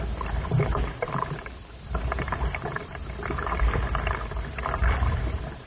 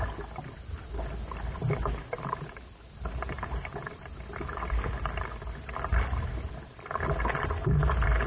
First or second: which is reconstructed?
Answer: first